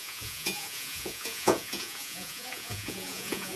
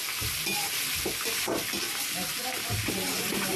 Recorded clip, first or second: second